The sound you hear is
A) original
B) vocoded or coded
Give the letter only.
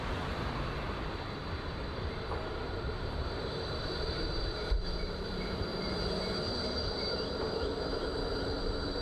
B